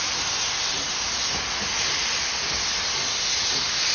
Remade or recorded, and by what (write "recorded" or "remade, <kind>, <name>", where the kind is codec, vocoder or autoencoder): recorded